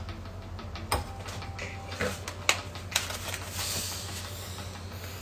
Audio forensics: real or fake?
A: real